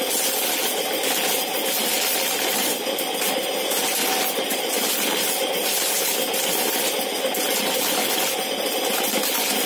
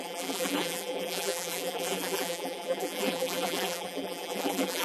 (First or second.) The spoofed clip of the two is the second